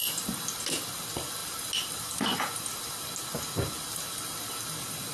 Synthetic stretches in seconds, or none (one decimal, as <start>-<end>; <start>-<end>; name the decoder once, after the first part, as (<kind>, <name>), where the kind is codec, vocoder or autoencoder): none